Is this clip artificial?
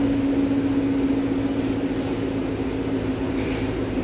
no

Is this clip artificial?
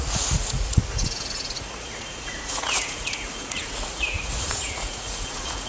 yes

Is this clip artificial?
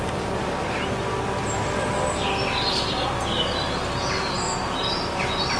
no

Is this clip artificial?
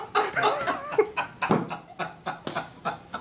no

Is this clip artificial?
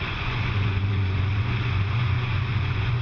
yes